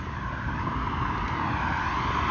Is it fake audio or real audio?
real